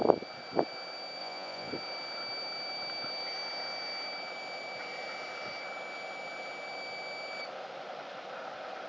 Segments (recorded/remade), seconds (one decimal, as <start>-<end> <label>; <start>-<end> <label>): 0.0-1.2 recorded; 1.2-1.7 remade; 1.7-8.9 recorded